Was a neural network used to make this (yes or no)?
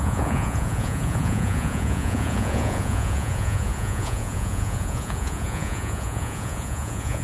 yes